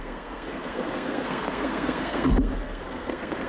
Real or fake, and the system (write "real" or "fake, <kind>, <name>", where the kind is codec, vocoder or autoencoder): fake, codec, SNAC